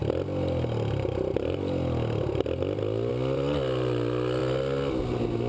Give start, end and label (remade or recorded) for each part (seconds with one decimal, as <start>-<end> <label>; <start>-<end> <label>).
0.0-5.5 recorded